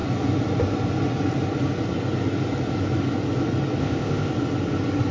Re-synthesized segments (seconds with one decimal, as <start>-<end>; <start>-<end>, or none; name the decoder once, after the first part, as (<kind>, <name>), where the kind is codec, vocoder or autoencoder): 3.8-4.3 (codec, ZipCodec)